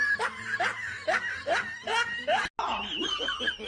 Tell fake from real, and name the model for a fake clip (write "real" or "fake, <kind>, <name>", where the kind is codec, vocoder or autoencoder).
real